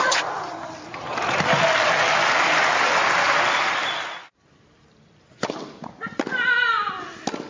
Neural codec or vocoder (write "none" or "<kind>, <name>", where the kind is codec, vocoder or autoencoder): none